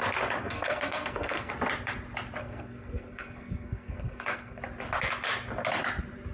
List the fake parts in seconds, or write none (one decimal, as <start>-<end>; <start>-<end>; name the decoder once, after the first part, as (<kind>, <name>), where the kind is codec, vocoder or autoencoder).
0.4-1.5 (codec, SNAC); 2.4-4.6